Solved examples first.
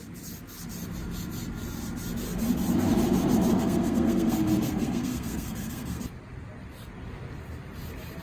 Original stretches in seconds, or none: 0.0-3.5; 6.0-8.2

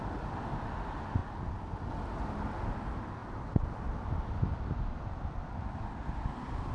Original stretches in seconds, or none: 0.0-6.7

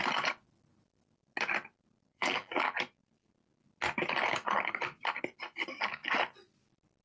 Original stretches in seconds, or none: 0.0-2.1; 2.8-7.0

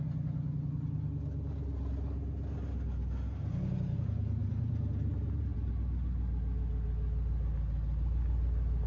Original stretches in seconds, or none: 0.0-4.4; 5.7-8.9

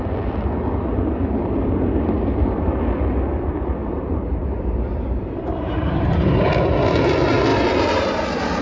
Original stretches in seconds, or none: 0.0-3.8; 6.5-7.5; 8.2-8.6

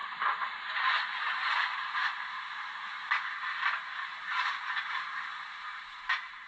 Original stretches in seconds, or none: 0.0-6.5

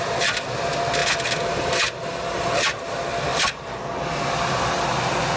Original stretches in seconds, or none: 0.0-5.4

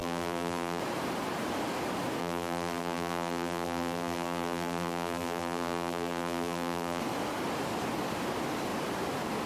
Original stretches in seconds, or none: 0.8-2.2; 7.0-9.5